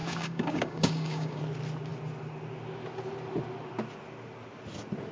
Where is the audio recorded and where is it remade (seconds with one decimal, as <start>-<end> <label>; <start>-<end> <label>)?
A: 0.0-1.4 remade; 1.4-5.1 recorded